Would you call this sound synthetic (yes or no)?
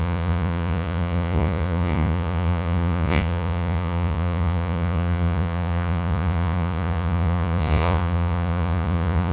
yes